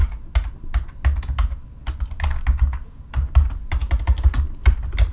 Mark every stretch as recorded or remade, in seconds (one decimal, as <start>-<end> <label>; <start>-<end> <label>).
0.0-5.1 recorded